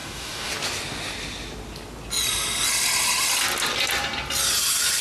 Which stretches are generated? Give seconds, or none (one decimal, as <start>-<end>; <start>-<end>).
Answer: 0.0-0.5